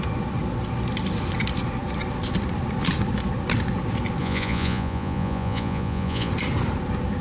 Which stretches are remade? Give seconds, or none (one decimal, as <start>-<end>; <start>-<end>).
4.2-6.3